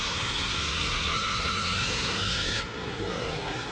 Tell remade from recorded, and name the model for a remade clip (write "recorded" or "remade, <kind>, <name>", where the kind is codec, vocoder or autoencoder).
remade, codec, SNAC